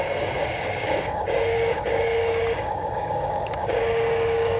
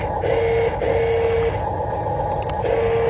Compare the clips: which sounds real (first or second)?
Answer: second